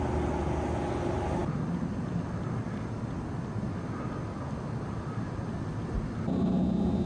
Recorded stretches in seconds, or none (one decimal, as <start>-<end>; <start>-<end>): 0.0-7.1